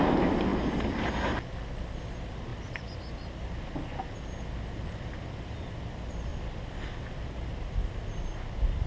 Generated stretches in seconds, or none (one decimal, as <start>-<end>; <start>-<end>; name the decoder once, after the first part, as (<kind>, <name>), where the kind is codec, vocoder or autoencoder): 0.5-1.1 (vocoder, BigVGAN v2); 2.5-3.6; 6.3-8.3